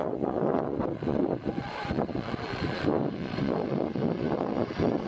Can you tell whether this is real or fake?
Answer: fake